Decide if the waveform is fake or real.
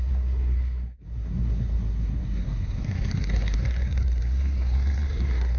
fake